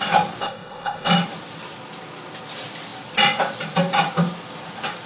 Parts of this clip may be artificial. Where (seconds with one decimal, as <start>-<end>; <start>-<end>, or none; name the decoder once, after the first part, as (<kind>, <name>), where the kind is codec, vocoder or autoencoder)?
0.4-1.1 (codec, ZipCodec)